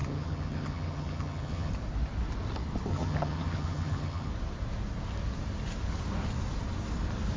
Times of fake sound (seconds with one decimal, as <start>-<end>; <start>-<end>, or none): 0.0-1.7; 2.9-4.3